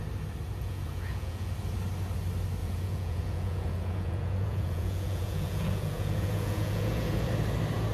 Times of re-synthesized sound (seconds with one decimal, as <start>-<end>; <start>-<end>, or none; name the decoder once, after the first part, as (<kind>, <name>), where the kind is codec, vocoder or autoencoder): 0.5-1.5 (vocoder, Vocos); 2.6-7.3